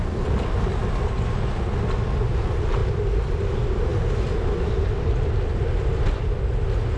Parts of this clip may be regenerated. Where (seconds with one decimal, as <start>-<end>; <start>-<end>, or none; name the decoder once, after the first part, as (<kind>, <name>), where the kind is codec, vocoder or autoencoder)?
2.8-3.4 (vocoder, BigVGAN v2)